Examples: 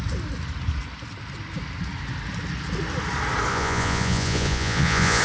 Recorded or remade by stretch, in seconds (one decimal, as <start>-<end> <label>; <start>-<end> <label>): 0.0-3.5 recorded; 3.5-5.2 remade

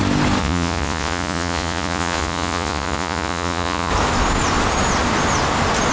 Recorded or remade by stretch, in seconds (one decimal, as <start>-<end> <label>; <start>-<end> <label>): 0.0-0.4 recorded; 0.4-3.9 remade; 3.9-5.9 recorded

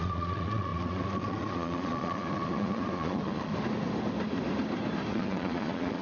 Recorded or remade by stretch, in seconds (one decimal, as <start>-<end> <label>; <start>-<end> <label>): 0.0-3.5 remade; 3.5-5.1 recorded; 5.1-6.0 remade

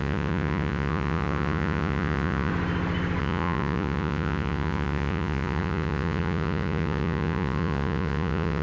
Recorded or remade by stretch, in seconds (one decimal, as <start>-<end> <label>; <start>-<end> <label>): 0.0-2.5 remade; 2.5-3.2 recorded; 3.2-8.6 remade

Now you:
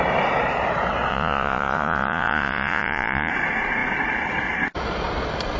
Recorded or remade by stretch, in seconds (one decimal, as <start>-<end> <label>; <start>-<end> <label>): 0.0-1.1 recorded; 1.1-3.3 remade; 3.3-5.6 recorded

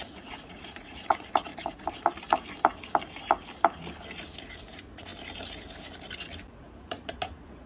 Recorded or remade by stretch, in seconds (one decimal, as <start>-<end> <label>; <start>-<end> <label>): 0.0-1.5 remade; 1.5-4.6 recorded; 4.6-5.1 remade; 5.1-6.5 recorded; 6.5-7.7 remade